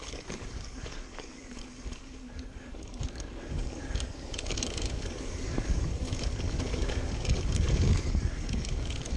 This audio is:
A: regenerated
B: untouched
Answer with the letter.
A